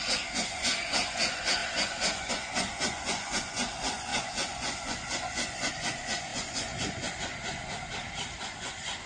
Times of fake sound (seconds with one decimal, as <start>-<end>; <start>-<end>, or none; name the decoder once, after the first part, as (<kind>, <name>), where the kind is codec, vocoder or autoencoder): 0.0-7.6 (vocoder, Vocos); 8.4-9.1